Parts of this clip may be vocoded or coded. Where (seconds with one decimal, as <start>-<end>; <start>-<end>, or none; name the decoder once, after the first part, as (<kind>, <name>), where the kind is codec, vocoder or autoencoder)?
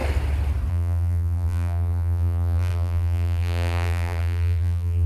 0.7-5.1 (vocoder, BigVGAN v2)